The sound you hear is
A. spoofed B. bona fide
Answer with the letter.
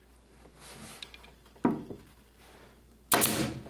B